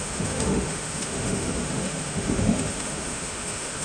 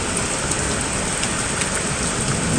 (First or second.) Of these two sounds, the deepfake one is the first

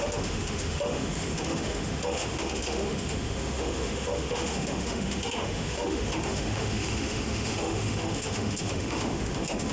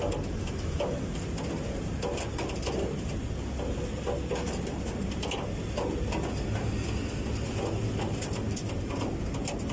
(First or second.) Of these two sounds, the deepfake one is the first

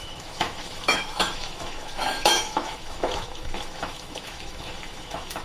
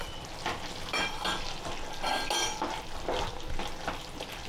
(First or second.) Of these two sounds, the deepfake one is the first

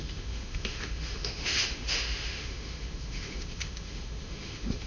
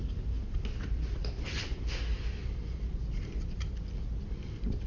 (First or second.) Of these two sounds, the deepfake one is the first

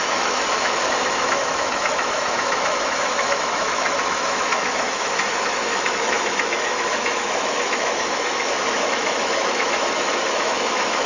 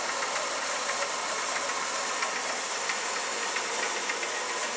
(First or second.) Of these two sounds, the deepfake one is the first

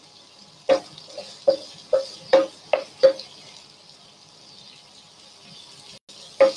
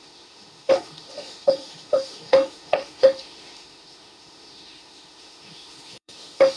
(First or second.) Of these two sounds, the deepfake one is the second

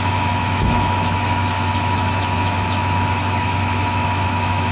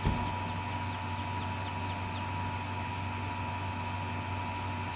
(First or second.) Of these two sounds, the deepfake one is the first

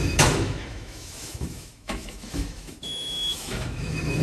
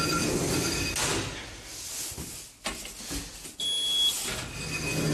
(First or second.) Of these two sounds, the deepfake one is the first